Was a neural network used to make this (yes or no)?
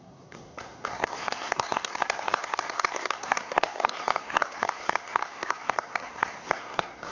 yes